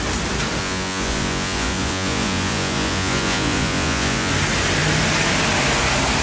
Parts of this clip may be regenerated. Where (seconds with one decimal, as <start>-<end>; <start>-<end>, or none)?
0.6-4.3